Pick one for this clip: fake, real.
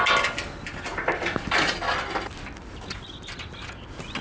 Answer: real